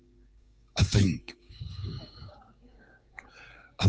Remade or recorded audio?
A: remade